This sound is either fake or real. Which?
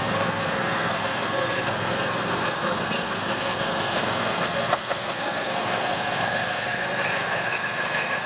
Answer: fake